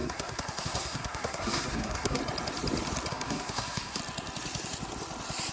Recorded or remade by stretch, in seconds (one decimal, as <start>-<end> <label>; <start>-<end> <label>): 0.0-2.2 remade; 2.2-3.1 recorded; 3.1-4.0 remade; 4.0-5.5 recorded